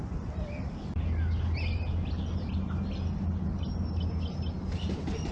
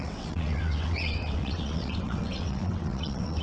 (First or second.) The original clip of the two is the first